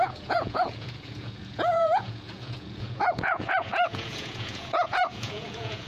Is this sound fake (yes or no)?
yes